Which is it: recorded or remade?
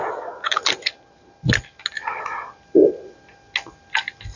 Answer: recorded